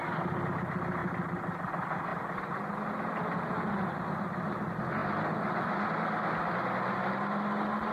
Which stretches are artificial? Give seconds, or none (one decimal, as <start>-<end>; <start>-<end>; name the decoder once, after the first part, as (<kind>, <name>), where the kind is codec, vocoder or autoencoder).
none